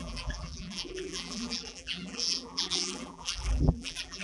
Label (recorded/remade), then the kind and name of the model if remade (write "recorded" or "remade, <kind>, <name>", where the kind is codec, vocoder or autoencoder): remade, vocoder, BigVGAN v2